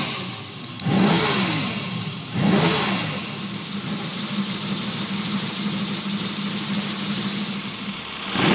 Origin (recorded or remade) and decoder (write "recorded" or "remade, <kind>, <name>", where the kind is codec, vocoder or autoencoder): recorded